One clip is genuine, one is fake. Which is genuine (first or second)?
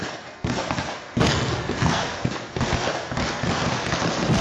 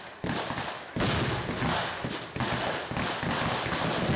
second